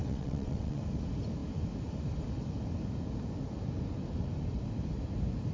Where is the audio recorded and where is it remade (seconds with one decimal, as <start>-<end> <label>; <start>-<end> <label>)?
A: 0.0-0.8 remade; 0.8-5.5 recorded